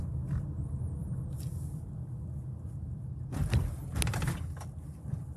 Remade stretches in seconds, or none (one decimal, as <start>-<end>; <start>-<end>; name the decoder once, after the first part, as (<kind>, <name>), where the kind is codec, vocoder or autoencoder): none